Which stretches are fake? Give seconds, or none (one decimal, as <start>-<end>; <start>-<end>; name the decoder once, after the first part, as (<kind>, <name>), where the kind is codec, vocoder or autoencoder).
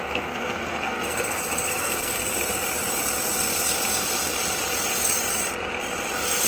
0.0-2.3 (codec, SNAC)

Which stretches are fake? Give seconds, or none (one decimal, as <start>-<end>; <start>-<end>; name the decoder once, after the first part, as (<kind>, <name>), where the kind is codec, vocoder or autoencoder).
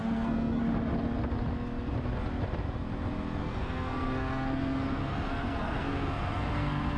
0.0-0.6 (codec, SNAC); 3.4-7.0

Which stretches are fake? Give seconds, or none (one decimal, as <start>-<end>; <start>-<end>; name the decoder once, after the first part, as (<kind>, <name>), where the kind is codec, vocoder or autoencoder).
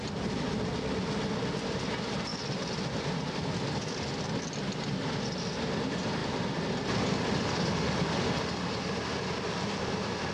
none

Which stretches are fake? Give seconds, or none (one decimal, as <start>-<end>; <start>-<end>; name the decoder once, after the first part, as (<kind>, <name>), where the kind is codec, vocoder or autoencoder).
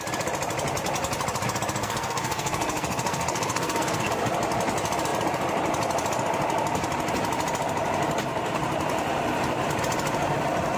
1.8-4.1 (codec, SNAC)